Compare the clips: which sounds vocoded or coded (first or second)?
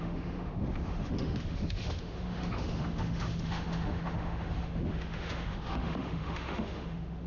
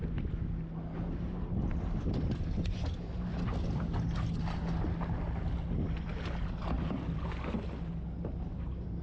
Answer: first